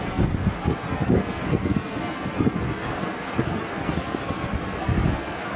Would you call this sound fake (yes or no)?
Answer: yes